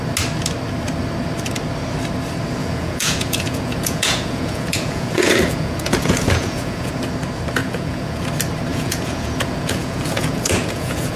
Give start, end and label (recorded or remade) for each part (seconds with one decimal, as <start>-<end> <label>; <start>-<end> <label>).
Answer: 0.0-2.6 recorded; 2.6-6.9 remade; 6.9-7.6 recorded; 7.6-8.2 remade; 8.2-8.7 recorded; 8.7-11.2 remade